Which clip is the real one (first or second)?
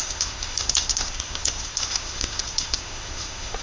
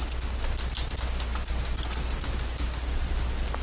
second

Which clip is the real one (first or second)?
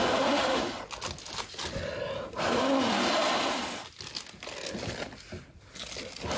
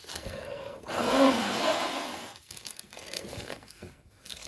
first